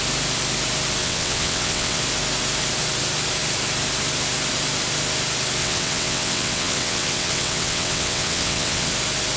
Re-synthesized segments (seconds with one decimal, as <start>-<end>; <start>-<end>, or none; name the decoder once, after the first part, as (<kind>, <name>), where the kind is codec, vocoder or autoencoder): 1.0-2.0 (vocoder, WaveNeXt); 5.6-8.9